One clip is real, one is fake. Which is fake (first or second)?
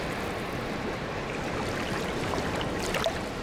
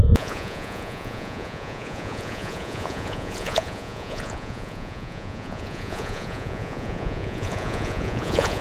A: second